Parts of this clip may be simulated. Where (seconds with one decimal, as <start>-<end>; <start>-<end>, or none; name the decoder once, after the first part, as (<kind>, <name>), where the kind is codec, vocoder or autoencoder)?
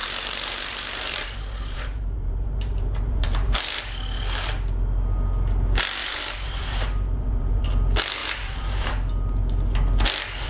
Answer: 0.0-3.8 (vocoder, BigVGAN v2); 6.0-7.6; 8.2-8.9